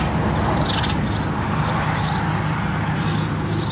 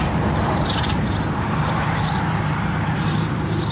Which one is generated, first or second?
second